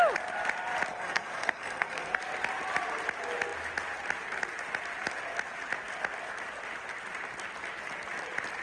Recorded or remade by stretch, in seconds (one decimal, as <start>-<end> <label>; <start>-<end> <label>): 0.0-0.9 recorded; 0.9-2.2 remade; 2.2-8.6 recorded